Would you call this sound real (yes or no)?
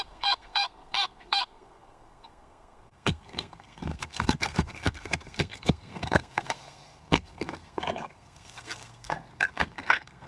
no